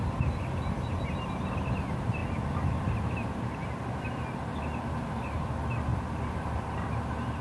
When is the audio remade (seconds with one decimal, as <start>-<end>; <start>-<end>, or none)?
none